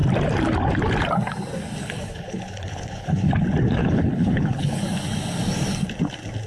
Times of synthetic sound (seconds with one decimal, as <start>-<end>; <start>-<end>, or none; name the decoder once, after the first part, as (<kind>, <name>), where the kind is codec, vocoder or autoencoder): 1.8-3.3 (codec, HILCodec); 3.8-4.8

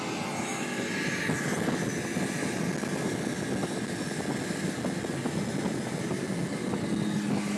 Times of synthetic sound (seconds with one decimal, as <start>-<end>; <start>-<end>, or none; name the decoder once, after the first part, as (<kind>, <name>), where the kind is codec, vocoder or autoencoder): none

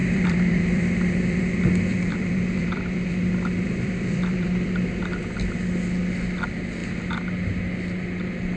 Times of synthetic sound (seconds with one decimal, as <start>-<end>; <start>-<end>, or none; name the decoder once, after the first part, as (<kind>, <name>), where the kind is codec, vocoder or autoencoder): 0.0-1.4 (vocoder, BigVGAN v2); 1.9-4.7